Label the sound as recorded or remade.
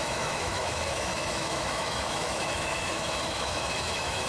remade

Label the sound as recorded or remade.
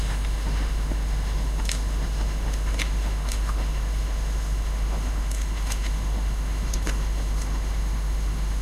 remade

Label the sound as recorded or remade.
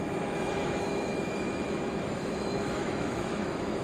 remade